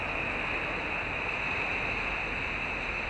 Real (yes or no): yes